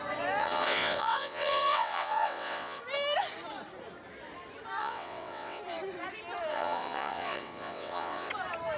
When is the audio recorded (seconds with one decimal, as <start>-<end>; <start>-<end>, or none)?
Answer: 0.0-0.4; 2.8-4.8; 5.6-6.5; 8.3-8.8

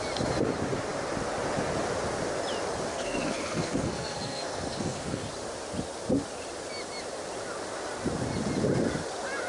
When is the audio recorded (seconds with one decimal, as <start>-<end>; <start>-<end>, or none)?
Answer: 0.0-2.9; 5.3-9.5

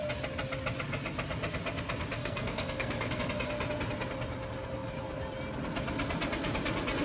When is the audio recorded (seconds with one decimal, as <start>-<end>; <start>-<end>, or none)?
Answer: 0.0-2.2; 3.2-7.0

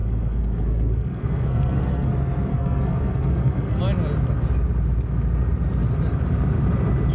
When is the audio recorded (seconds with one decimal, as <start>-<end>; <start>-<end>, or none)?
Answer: 2.1-2.5; 3.8-7.1